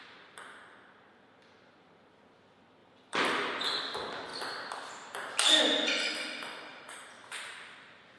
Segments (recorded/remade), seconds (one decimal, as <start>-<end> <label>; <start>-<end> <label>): 0.0-2.8 recorded; 2.8-3.8 remade; 3.8-4.3 recorded; 4.3-5.6 remade; 5.6-6.7 recorded; 6.7-8.2 remade